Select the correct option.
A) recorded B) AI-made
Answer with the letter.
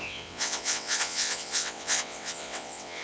B